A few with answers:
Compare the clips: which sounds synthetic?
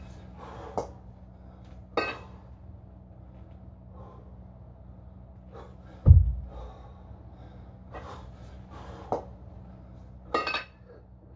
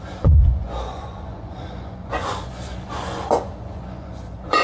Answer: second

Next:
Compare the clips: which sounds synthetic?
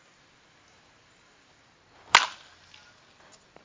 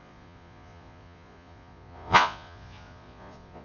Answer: second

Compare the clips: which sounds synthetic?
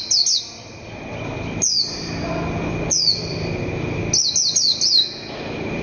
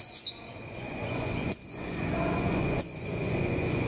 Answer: second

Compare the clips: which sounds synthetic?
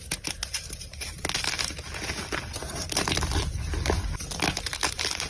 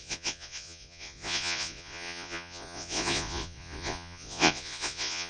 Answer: second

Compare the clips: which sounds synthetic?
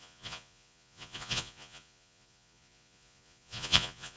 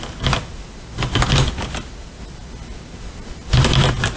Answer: first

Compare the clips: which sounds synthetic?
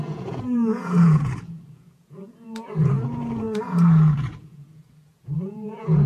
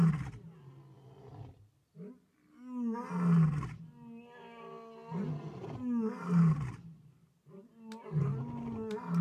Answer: first